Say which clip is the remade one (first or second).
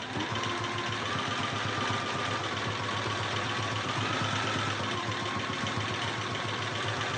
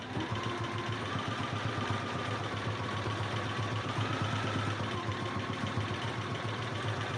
second